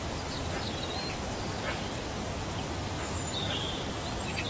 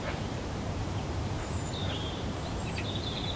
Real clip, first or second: first